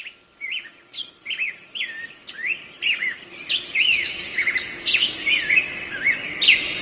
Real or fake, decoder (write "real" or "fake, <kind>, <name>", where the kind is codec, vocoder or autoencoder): real